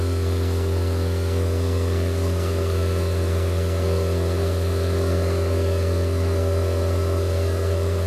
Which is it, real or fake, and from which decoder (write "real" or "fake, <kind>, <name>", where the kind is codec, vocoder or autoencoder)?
fake, codec, SNAC